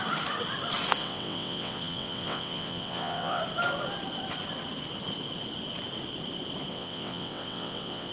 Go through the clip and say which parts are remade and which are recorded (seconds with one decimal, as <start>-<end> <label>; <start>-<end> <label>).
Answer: 0.0-1.0 recorded; 1.0-3.4 remade; 3.4-6.7 recorded; 6.7-8.1 remade

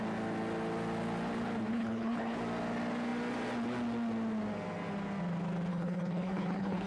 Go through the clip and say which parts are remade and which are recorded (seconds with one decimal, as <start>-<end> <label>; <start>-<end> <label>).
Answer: 0.0-1.7 recorded; 1.7-2.4 remade; 2.4-5.7 recorded; 5.7-6.9 remade

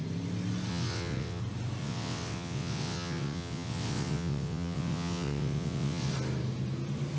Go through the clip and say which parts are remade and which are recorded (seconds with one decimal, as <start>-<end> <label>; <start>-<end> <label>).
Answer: 0.0-0.7 recorded; 0.7-1.4 remade; 1.4-1.8 recorded; 1.8-6.1 remade; 6.1-7.2 recorded

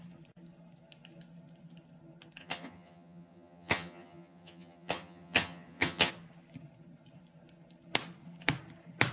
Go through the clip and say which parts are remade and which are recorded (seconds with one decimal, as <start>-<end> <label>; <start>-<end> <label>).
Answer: 0.0-2.4 recorded; 2.4-6.1 remade; 6.1-9.1 recorded

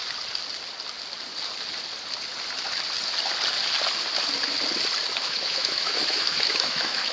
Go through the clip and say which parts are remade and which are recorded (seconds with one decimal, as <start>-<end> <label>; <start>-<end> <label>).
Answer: 0.0-5.0 recorded; 5.0-7.1 remade

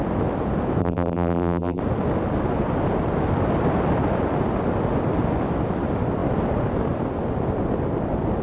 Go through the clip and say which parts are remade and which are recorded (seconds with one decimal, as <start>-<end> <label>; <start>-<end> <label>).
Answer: 0.0-0.8 recorded; 0.8-1.8 remade; 1.8-8.4 recorded